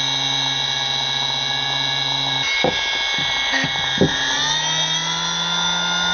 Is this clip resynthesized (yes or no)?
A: no